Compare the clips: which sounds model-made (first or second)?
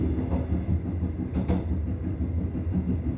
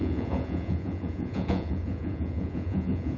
second